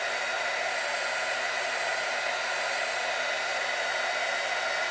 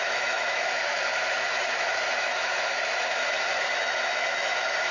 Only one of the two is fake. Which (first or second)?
second